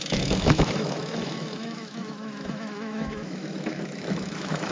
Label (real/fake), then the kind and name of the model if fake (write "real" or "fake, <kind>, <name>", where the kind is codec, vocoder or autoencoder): fake, autoencoder, DAC-VAE